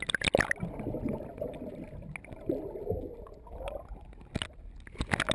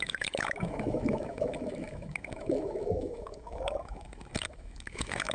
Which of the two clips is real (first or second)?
first